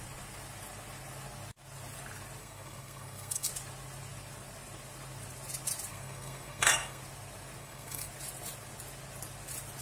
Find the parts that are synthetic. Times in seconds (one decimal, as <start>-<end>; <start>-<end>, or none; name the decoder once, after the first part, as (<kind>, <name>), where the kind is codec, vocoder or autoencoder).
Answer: 2.4-3.5 (codec, SNAC); 5.9-7.0; 7.6-8.1